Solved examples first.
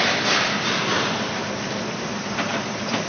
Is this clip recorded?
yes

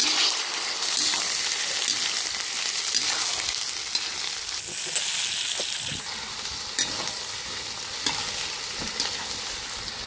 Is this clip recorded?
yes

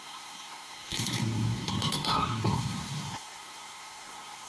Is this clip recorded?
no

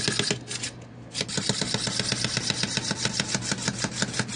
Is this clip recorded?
yes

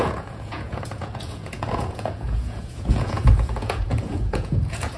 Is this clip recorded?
no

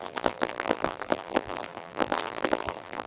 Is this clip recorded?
no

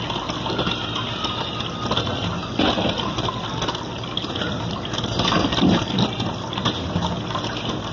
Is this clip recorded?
yes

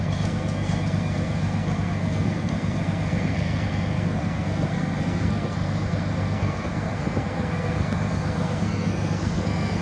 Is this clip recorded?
no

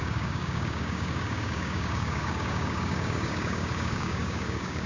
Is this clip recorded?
no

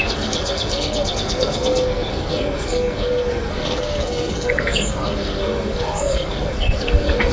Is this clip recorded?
no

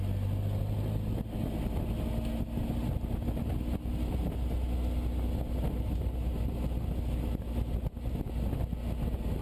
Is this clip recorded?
yes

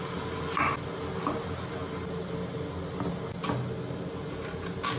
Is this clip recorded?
yes